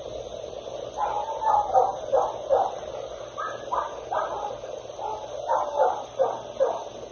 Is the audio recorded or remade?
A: recorded